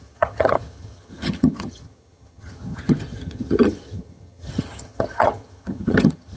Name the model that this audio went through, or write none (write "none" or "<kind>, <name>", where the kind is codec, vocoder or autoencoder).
vocoder, HiFi-GAN